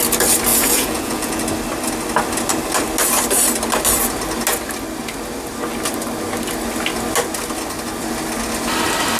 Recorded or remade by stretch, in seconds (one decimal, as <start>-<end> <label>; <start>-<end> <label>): 0.0-0.5 recorded; 0.5-1.4 remade; 1.4-9.2 recorded